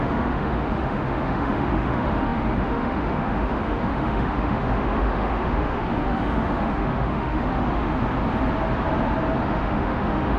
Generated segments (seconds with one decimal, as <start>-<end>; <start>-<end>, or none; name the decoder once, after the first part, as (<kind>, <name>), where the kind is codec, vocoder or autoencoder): 0.0-8.0 (autoencoder, DAC-VAE); 9.4-10.4